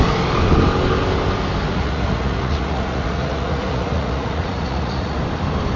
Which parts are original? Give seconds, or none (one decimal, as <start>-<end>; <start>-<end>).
0.0-1.7; 5.2-5.8